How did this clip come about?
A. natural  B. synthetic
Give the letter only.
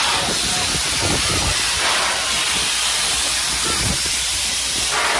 A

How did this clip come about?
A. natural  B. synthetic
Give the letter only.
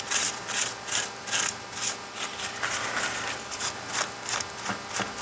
A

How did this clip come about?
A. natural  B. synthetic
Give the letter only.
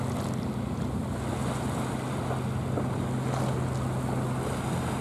A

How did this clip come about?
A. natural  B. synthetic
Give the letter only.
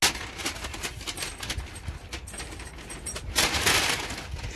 A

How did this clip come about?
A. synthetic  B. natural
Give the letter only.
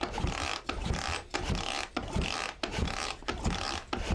B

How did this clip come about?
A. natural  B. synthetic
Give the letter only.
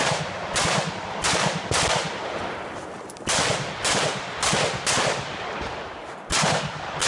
A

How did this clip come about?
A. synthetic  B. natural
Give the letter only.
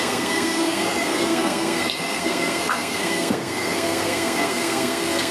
A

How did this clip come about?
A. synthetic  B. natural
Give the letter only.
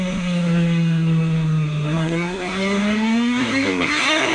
A